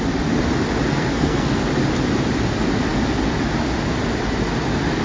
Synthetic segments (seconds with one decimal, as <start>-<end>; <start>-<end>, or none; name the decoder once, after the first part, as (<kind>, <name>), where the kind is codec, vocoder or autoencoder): 0.9-1.6 (codec, SNAC)